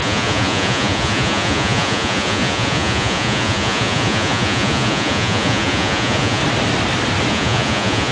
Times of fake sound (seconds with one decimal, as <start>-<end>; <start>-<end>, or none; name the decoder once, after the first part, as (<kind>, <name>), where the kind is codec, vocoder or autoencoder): 0.0-6.4 (vocoder, Vocos); 7.3-8.1